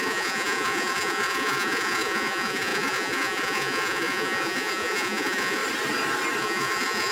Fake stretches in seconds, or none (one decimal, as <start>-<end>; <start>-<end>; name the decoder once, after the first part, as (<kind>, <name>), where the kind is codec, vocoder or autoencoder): 0.0-5.6 (vocoder, Vocos); 6.4-7.1